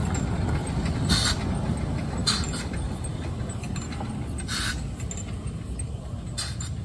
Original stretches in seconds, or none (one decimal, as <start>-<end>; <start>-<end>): 0.0-6.8